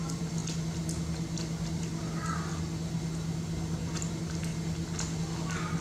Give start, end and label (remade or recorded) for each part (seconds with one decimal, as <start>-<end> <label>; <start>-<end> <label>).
0.0-2.5 remade; 2.5-4.1 recorded; 4.1-4.5 remade; 4.5-5.2 recorded; 5.2-5.8 remade